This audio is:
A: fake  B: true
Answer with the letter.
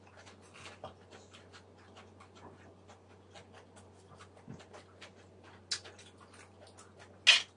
B